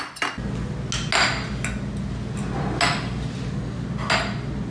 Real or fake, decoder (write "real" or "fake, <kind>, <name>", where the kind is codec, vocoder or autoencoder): real